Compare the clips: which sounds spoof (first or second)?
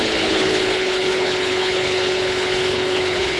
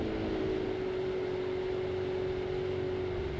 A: first